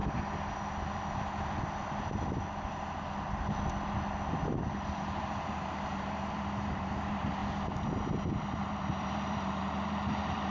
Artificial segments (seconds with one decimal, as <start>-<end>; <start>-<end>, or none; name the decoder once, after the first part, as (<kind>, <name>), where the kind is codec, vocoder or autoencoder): 4.7-7.4 (vocoder, BigVGAN v2); 8.5-10.5